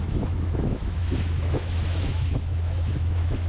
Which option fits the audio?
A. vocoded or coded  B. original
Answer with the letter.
A